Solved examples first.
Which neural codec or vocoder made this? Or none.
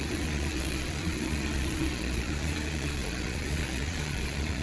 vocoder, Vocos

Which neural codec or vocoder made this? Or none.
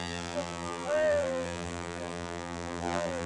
vocoder, BigVGAN v2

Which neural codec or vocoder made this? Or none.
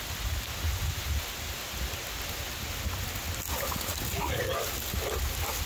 none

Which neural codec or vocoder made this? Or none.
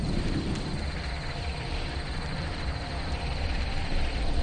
vocoder, BigVGAN v2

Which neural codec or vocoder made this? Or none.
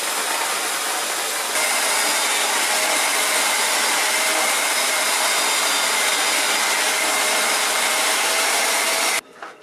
none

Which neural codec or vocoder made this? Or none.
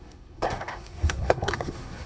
codec, SNAC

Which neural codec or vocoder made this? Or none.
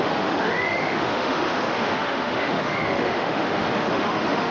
autoencoder, DAC-VAE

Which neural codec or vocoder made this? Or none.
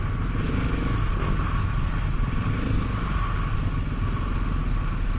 none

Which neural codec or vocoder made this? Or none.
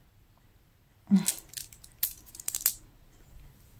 none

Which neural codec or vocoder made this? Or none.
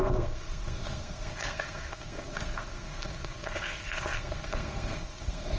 codec, SNAC